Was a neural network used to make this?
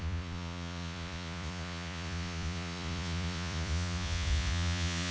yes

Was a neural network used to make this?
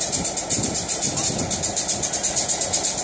no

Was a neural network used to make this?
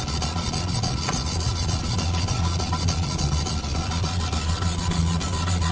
yes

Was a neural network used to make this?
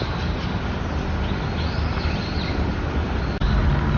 no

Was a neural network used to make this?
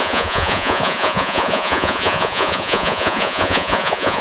yes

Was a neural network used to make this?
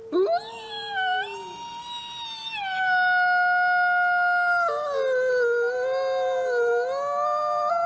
no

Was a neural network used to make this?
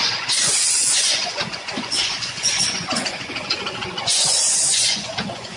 yes